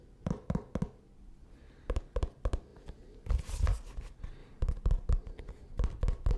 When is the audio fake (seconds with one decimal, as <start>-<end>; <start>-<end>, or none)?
4.4-5.1